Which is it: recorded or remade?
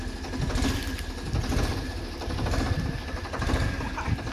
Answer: recorded